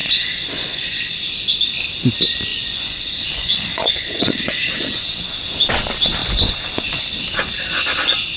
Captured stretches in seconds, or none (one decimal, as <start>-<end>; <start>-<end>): 1.0-2.5; 5.3-6.2; 7.1-8.4